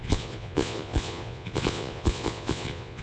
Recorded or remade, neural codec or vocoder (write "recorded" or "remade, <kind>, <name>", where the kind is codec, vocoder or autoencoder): remade, vocoder, Vocos